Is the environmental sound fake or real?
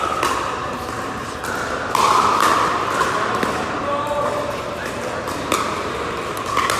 real